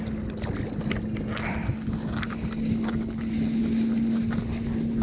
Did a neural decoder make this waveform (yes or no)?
no